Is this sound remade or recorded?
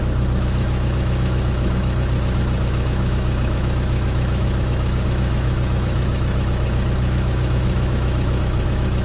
remade